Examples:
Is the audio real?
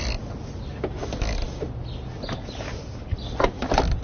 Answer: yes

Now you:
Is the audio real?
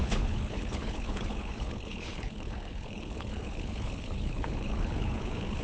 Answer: no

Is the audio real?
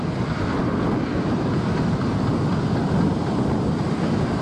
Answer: yes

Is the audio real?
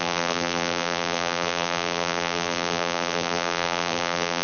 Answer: no